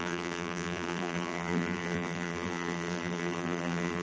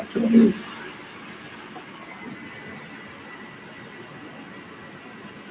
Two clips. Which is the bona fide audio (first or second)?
second